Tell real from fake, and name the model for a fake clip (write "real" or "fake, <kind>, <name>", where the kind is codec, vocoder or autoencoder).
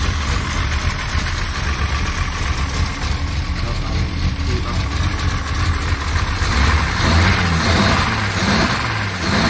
real